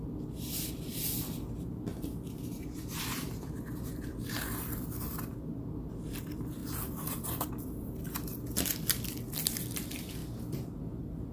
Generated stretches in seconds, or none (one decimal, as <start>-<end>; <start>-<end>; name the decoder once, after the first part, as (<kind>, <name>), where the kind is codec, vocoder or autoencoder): none